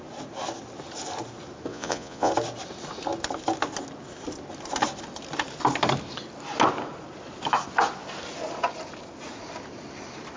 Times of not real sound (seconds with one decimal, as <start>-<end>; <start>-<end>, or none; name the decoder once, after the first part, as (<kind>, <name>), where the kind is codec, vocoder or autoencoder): 1.7-2.3 (vocoder, Vocos)